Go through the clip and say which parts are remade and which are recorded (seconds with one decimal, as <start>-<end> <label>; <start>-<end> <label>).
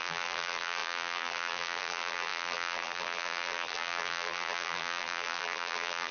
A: 0.0-6.1 remade